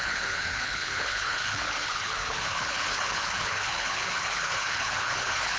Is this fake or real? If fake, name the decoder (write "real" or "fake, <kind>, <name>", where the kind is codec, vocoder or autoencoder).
fake, codec, HILCodec